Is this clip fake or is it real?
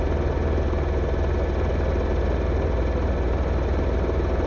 real